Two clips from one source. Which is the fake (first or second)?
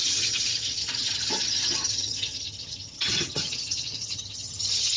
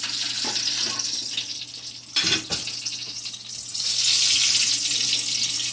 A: first